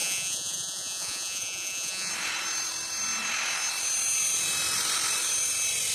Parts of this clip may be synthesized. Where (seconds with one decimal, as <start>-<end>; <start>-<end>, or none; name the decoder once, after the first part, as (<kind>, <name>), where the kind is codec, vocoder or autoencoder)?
0.0-2.1 (vocoder, Vocos)